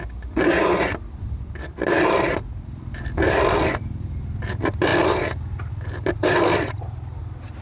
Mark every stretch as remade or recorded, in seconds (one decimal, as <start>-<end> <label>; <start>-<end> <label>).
0.0-7.6 recorded